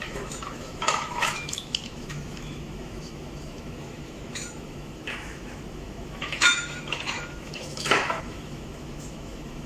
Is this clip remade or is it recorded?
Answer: remade